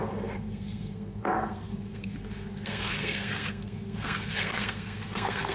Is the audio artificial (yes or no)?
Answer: yes